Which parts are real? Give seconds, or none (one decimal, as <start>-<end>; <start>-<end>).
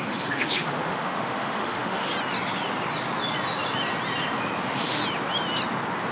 2.1-4.6; 5.0-6.1